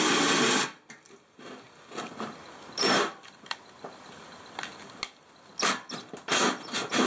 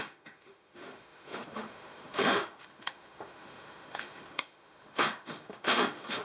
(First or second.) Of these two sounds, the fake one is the second